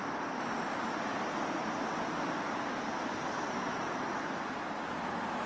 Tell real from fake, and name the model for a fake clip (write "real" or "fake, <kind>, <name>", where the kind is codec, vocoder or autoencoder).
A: real